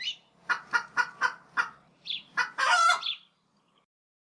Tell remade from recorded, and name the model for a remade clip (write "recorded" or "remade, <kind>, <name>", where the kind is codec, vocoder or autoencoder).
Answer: recorded